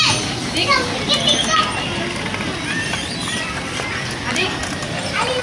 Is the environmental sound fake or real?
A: real